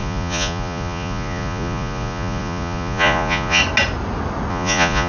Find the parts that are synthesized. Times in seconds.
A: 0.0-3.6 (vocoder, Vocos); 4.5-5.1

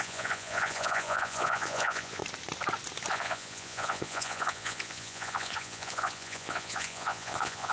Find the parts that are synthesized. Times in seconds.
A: 0.0-2.2 (vocoder, Vocos); 3.1-7.7

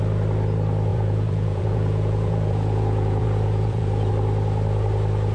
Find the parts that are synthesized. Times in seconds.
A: 0.9-4.1 (vocoder, Vocos)

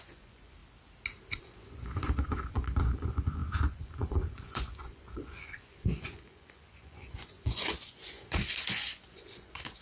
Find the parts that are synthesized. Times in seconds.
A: 0.0-0.6 (vocoder, Vocos); 1.4-9.8

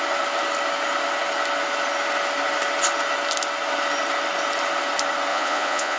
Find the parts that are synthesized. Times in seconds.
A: 5.3-6.0 (vocoder, Vocos)